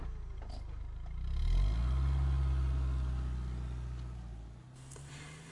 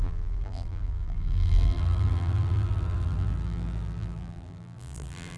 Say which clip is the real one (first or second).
first